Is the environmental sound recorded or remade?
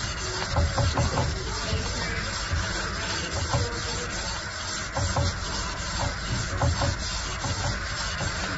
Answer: recorded